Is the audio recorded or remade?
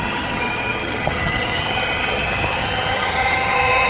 remade